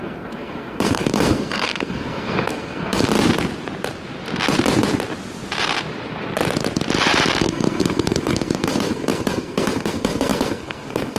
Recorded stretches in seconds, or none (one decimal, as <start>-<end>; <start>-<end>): 3.1-7.4